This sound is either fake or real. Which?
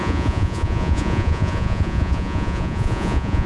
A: fake